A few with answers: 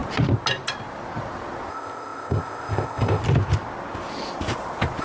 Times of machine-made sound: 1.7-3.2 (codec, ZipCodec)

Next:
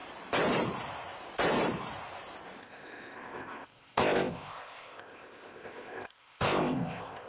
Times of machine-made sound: 2.6-7.3 (codec, ZipCodec)

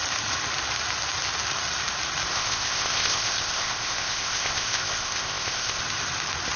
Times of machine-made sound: 2.3-5.8 (codec, ZipCodec)

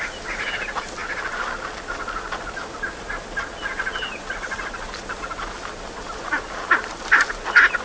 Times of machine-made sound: none